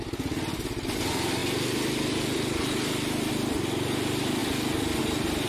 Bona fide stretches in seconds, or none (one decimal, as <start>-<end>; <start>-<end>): 0.0-5.5